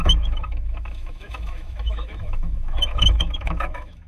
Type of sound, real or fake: fake